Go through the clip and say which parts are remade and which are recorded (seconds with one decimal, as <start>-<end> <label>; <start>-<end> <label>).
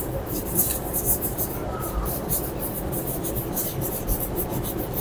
0.0-5.0 recorded